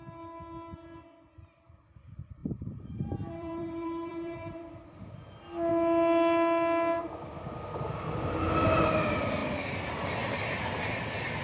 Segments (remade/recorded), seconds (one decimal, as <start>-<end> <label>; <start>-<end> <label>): 0.0-2.4 recorded; 2.4-4.7 remade; 4.7-11.4 recorded